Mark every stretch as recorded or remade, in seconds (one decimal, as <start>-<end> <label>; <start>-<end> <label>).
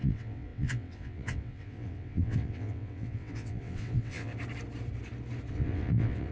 0.0-4.3 remade; 4.3-5.5 recorded; 5.5-6.3 remade